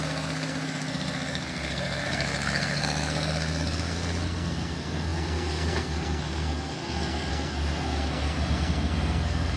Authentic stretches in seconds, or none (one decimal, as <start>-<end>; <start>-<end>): none